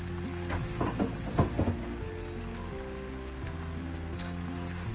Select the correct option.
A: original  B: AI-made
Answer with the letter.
A